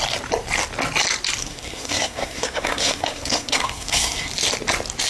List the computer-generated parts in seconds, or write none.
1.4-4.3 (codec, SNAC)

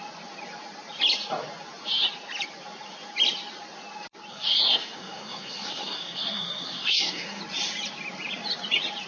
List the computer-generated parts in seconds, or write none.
4.3-7.4 (codec, SNAC)

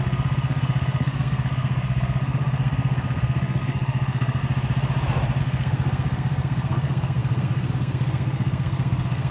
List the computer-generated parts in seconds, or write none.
0.0-4.4 (codec, SNAC); 5.4-9.3